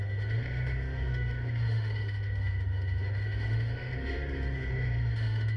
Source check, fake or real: fake